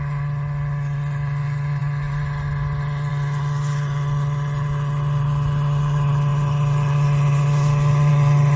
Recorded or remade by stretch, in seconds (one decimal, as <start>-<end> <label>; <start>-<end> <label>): 0.0-8.6 recorded